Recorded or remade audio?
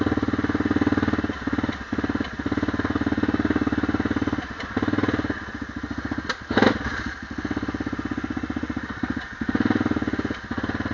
recorded